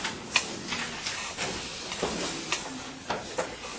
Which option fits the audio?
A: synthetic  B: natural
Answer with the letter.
B